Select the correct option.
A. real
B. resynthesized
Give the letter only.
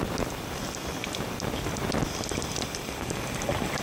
A